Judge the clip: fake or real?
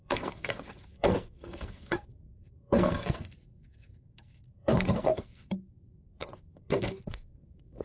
fake